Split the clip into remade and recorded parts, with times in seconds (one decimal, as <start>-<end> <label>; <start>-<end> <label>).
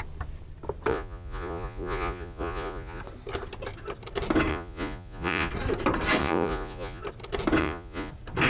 0.0-0.9 recorded; 0.9-3.0 remade; 3.0-4.5 recorded; 4.5-5.5 remade; 5.5-6.2 recorded; 6.2-7.0 remade; 7.0-7.6 recorded; 7.6-8.1 remade; 8.1-8.5 recorded